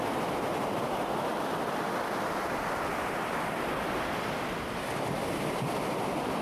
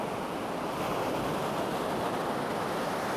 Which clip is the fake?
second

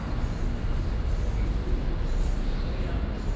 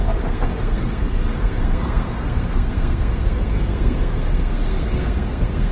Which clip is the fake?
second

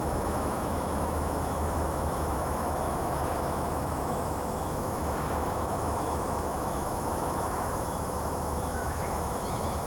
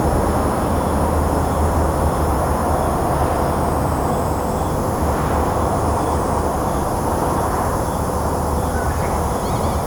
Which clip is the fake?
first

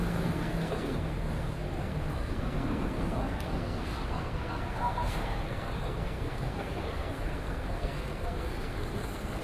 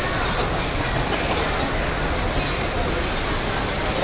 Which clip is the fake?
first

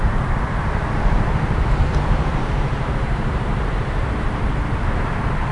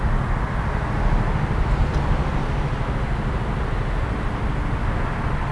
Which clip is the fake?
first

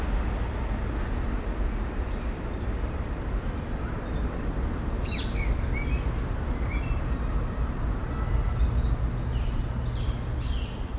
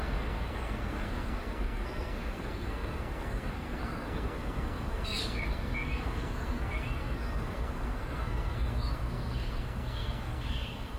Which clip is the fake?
second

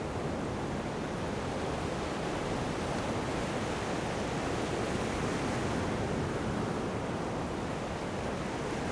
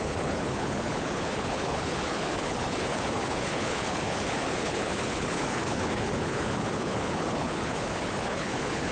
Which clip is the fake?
second